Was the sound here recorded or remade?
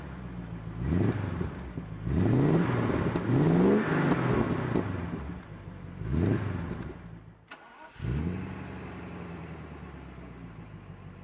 recorded